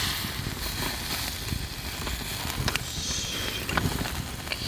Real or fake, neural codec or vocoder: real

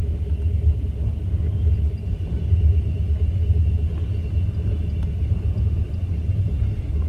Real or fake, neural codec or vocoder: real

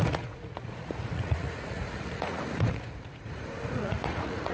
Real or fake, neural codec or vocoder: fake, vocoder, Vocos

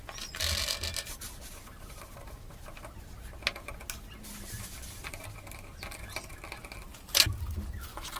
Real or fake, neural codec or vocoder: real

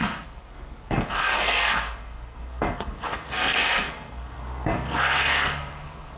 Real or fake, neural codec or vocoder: fake, codec, SNAC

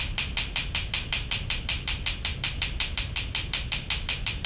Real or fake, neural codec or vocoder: real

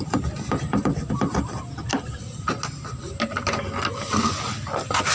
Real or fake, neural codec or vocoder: real